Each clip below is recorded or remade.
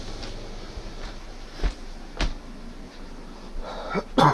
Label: recorded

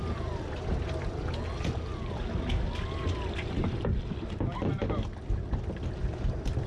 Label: recorded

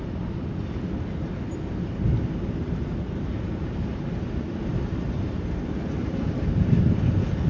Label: recorded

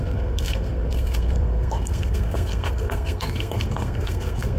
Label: remade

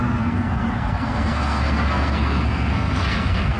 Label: remade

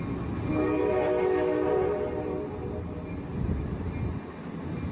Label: recorded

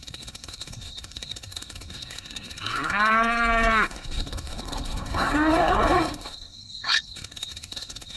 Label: remade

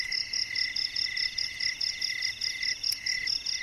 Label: recorded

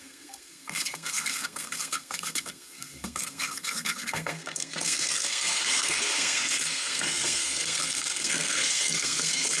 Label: remade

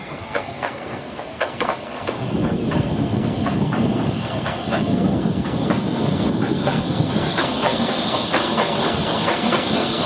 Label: remade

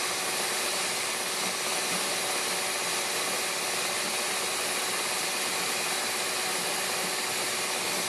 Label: recorded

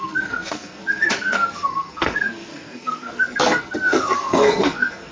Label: remade